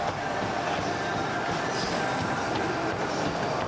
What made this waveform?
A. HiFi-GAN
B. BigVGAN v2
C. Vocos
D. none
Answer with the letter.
D